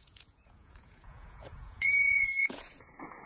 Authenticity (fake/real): fake